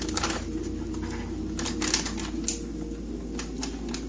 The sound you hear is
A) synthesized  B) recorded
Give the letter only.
B